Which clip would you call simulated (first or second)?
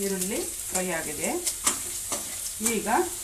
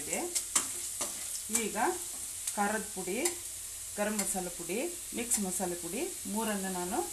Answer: first